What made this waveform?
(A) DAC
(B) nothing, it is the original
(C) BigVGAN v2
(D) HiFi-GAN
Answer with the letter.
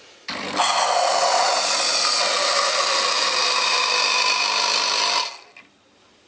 B